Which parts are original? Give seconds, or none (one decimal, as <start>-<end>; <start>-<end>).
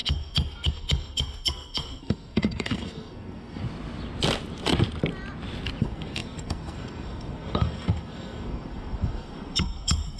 3.6-5.8